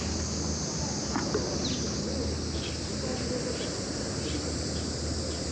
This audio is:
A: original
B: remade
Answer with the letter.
A